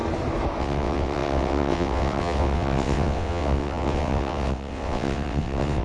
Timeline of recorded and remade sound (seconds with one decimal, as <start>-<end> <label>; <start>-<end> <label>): 0.0-0.6 recorded; 0.6-5.8 remade